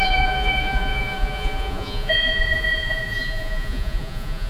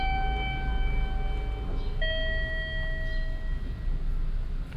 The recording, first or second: second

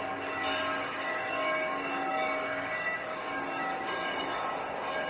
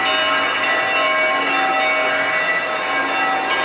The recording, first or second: second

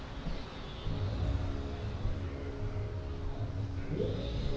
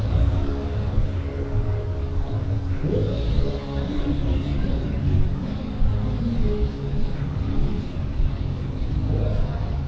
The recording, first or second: first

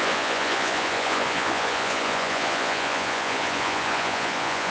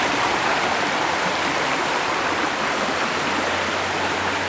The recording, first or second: second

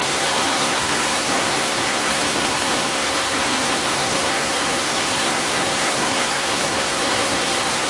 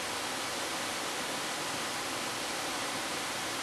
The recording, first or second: second